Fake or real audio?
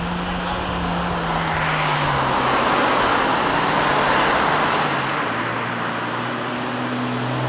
real